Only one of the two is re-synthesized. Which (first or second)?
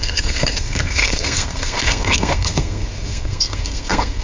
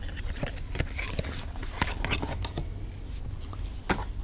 first